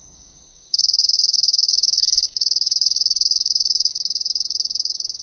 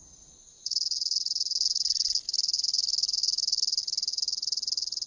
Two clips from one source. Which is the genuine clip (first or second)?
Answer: second